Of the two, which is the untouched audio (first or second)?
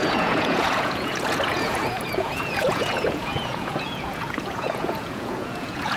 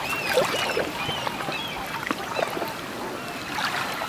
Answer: second